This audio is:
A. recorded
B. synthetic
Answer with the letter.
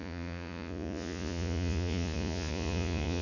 B